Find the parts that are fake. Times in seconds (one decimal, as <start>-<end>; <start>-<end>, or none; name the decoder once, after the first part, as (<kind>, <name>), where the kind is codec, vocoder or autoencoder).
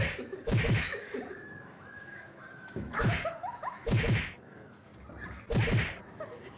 0.0-4.9 (autoencoder, DAC-VAE); 6.1-6.6